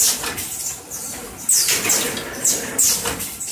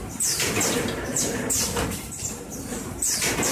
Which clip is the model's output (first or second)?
second